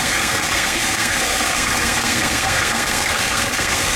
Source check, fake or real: fake